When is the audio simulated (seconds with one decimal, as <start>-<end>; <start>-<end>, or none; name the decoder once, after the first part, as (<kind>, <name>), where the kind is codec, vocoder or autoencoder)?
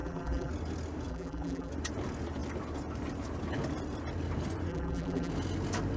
0.0-0.5 (vocoder, BigVGAN v2); 1.1-1.7; 4.7-5.3